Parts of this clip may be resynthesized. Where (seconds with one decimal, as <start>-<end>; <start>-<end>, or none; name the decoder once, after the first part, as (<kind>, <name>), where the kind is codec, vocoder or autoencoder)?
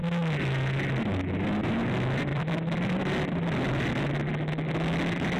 2.3-3.0 (vocoder, BigVGAN v2)